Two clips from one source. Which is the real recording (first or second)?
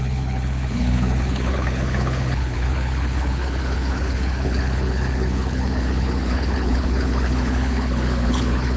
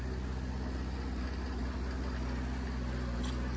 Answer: second